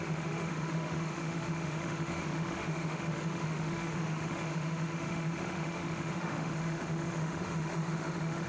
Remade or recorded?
remade